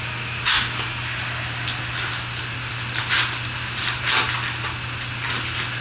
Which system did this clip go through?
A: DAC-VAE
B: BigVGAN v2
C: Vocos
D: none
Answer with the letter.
D